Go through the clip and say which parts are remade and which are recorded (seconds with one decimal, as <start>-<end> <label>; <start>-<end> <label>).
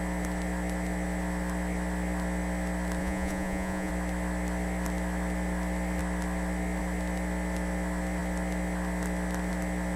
0.0-3.0 recorded; 3.0-3.9 remade; 3.9-10.0 recorded